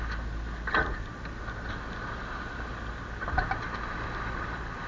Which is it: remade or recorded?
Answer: recorded